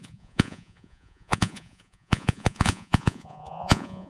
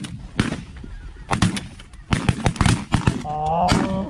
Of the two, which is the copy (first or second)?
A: first